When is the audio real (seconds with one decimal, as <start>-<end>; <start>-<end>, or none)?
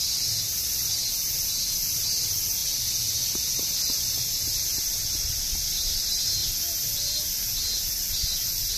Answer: 0.0-8.8